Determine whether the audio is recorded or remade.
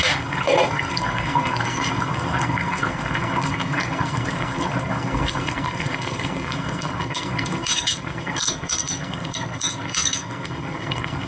remade